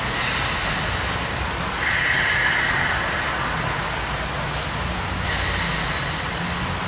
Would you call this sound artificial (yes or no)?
no